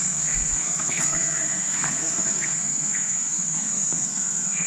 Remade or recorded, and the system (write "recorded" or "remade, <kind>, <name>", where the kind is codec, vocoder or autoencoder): remade, codec, SNAC